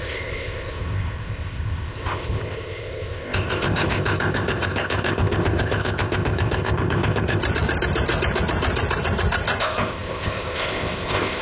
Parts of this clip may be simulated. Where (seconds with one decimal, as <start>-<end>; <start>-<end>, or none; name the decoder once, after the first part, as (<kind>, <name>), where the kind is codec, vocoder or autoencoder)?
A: 0.0-7.4 (codec, ZipCodec); 9.6-11.4

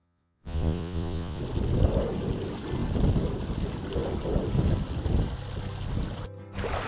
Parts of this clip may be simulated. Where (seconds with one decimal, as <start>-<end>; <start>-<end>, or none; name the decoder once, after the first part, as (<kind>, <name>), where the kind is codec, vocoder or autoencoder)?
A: 0.0-1.4 (vocoder, Vocos)

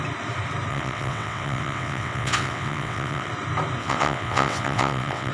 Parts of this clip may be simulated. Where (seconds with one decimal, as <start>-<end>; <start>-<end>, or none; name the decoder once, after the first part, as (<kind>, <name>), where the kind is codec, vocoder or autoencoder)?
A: 0.7-3.3 (vocoder, WaveNeXt); 3.8-5.3

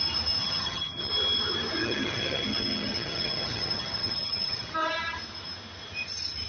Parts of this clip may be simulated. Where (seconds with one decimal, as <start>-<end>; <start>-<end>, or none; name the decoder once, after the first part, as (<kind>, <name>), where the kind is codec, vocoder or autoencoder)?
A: 0.4-1.1 (vocoder, HiFi-GAN); 1.8-4.7

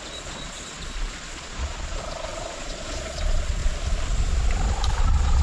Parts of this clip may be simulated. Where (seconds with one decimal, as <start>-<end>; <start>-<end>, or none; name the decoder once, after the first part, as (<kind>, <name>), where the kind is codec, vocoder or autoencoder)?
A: 0.0-3.6 (vocoder, Vocos); 5.0-5.4

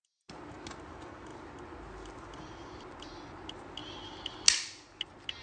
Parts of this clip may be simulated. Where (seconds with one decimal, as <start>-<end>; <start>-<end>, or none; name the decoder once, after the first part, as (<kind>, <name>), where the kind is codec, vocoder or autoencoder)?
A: none

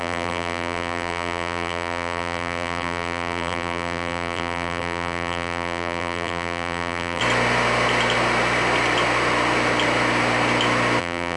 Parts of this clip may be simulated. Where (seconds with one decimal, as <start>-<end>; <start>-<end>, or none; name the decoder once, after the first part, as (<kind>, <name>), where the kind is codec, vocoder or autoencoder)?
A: 0.0-7.2 (vocoder, BigVGAN v2); 11.0-11.4